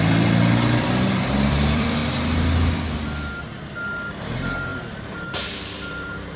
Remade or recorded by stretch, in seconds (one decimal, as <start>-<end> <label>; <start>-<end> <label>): 0.0-2.0 remade; 2.0-4.1 recorded; 4.1-6.4 remade